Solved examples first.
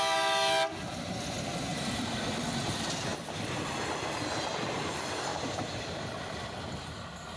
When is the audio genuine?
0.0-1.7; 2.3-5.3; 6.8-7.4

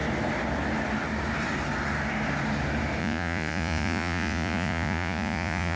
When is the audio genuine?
0.0-3.0

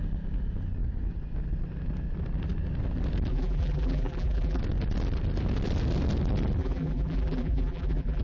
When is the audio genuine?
0.0-3.3; 4.6-6.6

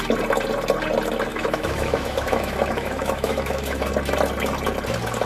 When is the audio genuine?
0.0-1.3; 3.9-5.3

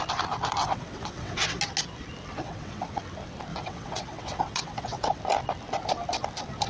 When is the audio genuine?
0.0-0.6; 1.6-2.3; 3.0-3.5; 5.2-6.7

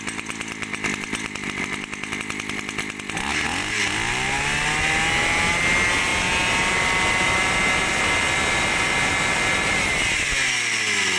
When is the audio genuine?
0.0-11.2

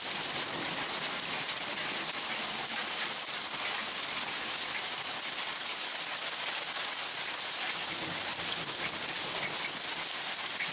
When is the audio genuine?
0.0-10.7

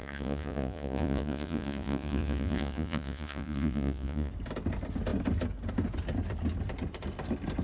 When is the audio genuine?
4.3-7.6